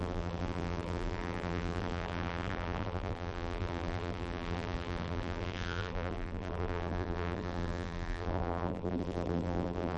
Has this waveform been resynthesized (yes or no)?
yes